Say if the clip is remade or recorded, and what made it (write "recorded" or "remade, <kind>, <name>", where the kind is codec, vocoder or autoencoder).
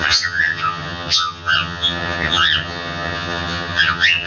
remade, vocoder, HiFi-GAN